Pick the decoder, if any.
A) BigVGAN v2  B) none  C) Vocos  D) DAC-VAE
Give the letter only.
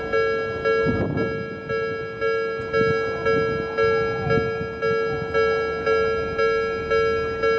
B